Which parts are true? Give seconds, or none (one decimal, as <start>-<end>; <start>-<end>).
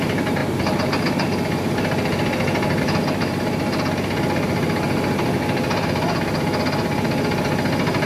0.0-8.1